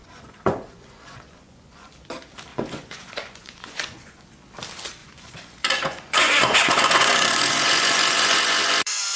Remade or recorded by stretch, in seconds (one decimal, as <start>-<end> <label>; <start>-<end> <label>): 0.0-1.9 remade; 1.9-2.5 recorded; 2.5-4.2 remade; 4.2-5.0 recorded; 5.0-9.2 remade

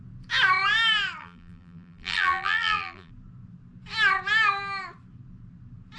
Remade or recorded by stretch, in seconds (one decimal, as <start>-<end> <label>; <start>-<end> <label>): 0.0-1.2 recorded; 1.2-3.1 remade; 3.1-6.0 recorded

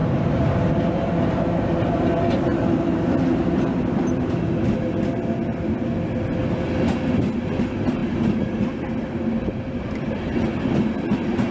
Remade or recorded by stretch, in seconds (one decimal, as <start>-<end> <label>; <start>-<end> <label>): 0.0-11.5 recorded

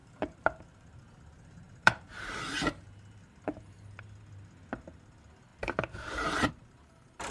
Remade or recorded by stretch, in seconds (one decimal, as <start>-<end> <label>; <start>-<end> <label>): 0.0-1.0 remade; 1.0-1.8 recorded; 1.8-4.2 remade; 4.2-5.5 recorded; 5.5-6.5 remade; 6.5-7.3 recorded

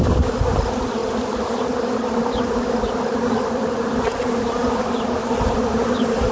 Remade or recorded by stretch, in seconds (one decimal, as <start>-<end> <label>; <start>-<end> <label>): 0.0-6.3 recorded

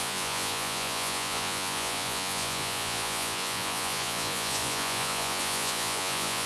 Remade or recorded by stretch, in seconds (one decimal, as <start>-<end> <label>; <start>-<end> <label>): 0.0-6.5 remade

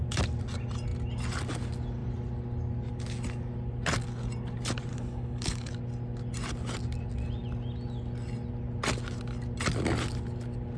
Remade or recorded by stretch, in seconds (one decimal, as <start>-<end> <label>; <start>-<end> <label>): 0.0-4.9 recorded; 4.9-5.7 remade; 5.7-10.8 recorded